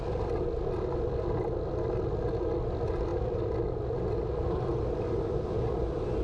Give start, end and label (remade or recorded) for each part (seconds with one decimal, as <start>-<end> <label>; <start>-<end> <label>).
0.0-6.2 recorded